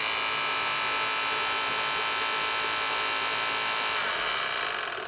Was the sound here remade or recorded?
recorded